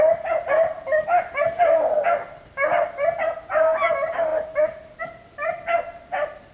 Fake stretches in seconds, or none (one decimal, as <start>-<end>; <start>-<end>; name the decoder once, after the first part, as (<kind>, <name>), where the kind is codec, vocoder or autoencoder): none